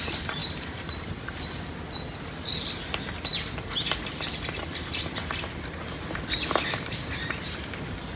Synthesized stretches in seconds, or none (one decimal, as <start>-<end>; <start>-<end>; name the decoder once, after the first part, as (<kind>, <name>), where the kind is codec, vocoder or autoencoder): 0.4-0.9 (vocoder, BigVGAN v2)